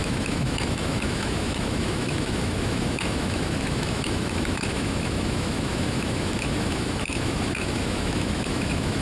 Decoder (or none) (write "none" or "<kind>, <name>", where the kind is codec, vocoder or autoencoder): autoencoder, DAC-VAE